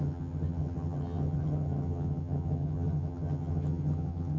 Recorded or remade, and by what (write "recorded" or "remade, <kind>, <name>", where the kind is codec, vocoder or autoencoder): remade, vocoder, HiFi-GAN